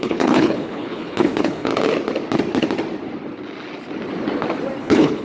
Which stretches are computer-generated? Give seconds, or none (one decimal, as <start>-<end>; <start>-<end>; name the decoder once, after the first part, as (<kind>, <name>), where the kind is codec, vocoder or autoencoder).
0.0-1.7 (codec, HILCodec); 4.8-5.2